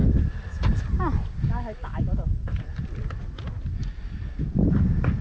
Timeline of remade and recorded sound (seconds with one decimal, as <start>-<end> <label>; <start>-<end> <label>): 0.0-0.6 recorded; 0.6-2.8 remade; 2.8-5.2 recorded